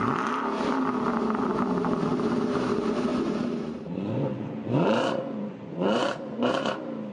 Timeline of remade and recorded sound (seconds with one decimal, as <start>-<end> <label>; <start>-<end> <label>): 0.0-3.1 recorded; 3.1-6.5 remade; 6.5-7.1 recorded